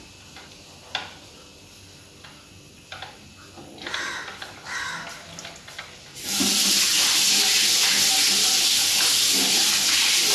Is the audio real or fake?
real